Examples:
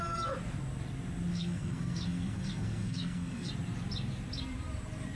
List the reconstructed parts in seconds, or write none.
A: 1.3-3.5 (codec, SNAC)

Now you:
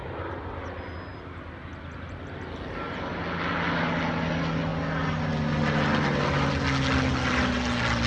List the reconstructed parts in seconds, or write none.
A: none